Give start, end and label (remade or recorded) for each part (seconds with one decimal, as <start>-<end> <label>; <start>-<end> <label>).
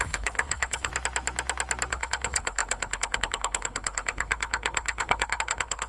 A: 0.0-0.9 remade; 0.9-1.9 recorded; 1.9-5.9 remade